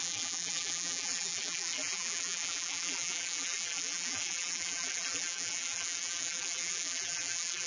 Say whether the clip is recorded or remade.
remade